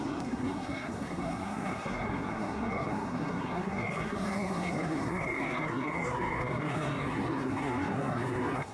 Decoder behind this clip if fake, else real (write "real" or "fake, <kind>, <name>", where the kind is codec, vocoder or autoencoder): fake, codec, SNAC